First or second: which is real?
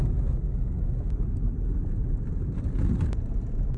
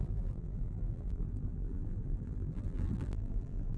first